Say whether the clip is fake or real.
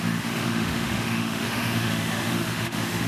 fake